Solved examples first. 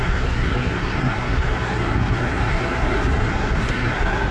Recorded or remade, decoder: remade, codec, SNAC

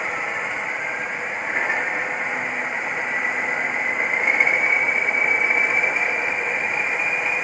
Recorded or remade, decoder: recorded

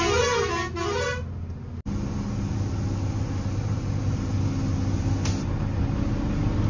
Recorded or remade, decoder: recorded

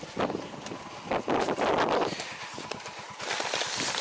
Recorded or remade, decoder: recorded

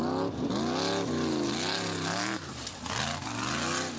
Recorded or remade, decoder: recorded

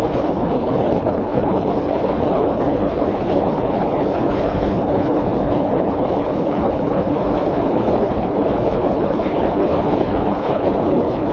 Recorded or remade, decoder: remade, codec, HILCodec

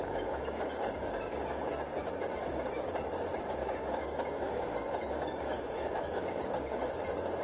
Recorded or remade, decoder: remade, codec, DAC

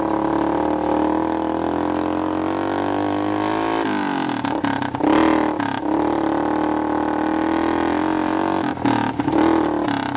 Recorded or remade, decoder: recorded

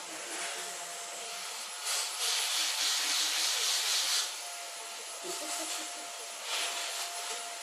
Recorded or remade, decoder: recorded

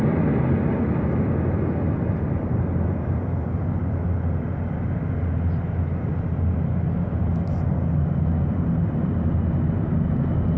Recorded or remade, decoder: recorded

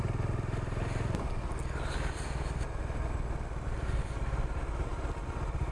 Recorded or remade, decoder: recorded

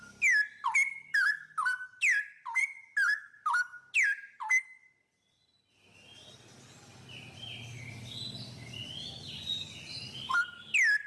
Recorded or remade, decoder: recorded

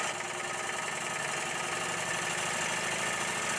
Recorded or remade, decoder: recorded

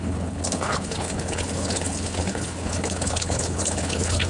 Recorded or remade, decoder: remade, codec, HILCodec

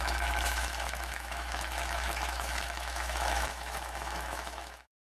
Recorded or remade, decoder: remade, autoencoder, DAC-VAE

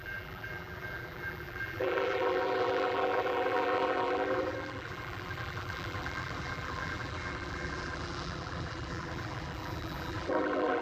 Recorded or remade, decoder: remade, vocoder, BigVGAN v2